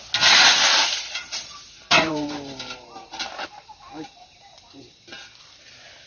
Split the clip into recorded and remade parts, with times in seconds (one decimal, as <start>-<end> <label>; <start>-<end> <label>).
0.0-0.8 recorded; 0.8-3.7 remade; 3.7-6.1 recorded